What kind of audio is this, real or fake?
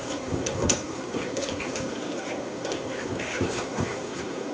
fake